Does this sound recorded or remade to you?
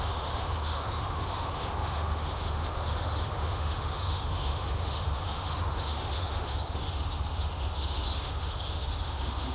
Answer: remade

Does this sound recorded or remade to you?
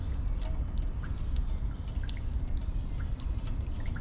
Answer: recorded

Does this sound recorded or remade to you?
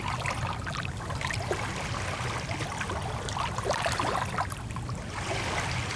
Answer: recorded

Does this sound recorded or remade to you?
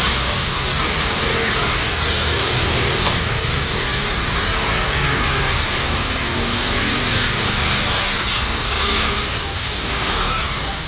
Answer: remade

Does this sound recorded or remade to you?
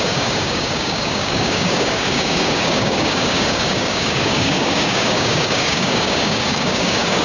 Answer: remade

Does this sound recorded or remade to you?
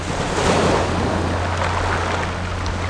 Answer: recorded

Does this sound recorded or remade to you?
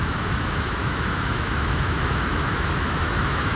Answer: remade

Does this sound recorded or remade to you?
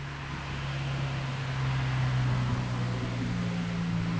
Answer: recorded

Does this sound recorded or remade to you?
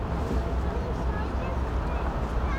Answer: recorded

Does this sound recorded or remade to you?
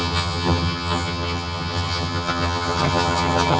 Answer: remade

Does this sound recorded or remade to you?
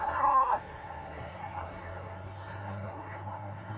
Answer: remade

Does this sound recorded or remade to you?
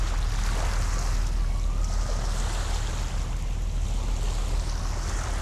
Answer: recorded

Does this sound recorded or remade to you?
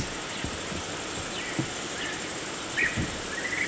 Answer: recorded